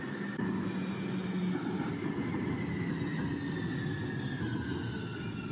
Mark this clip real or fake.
real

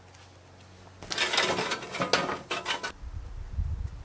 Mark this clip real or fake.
real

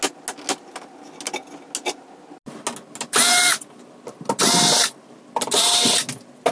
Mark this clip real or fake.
real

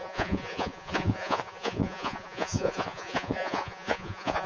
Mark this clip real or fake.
fake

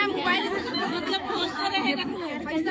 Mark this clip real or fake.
fake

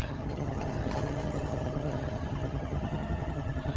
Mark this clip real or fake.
fake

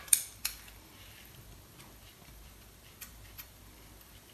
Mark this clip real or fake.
fake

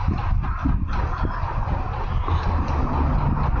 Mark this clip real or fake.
real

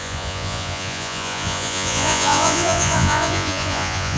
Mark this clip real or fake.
fake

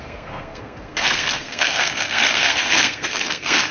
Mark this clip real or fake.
fake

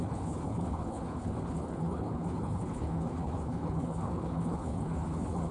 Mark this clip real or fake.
fake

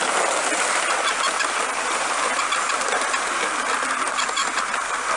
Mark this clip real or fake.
real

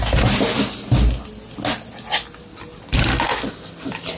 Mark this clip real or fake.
real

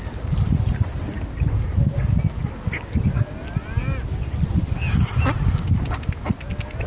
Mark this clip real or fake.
real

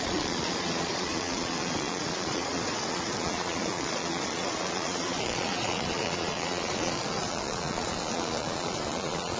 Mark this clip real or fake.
fake